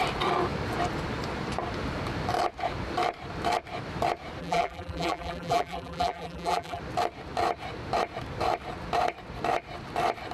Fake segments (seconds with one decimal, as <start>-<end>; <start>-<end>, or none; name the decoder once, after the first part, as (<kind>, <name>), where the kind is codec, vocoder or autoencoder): 4.4-6.8 (vocoder, BigVGAN v2)

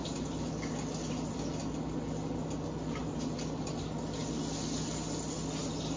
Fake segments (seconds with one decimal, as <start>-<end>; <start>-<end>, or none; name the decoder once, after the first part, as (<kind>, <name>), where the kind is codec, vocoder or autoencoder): 0.0-0.5 (vocoder, BigVGAN v2); 3.0-3.7

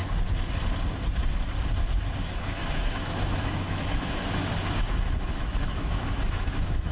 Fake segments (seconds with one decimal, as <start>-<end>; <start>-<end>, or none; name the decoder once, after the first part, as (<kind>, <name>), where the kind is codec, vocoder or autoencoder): 2.2-6.9 (autoencoder, DAC-VAE)

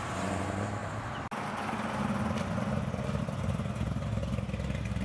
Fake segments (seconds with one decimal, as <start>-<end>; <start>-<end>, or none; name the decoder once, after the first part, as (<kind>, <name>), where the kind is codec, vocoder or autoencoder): none

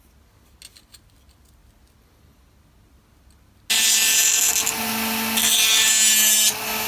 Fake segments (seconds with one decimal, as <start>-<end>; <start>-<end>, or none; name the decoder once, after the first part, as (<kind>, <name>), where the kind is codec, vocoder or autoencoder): none